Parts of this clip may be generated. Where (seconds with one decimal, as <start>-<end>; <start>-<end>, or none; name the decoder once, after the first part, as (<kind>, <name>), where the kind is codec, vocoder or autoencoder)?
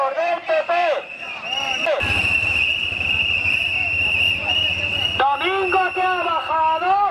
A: 0.0-4.5 (vocoder, BigVGAN v2)